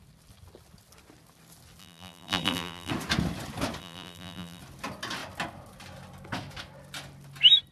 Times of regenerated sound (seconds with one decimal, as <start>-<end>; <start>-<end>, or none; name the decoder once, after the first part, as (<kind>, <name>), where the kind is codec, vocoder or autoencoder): 1.8-2.9 (vocoder, BigVGAN v2); 3.8-4.6